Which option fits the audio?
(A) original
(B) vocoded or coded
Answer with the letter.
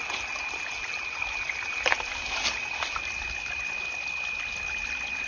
A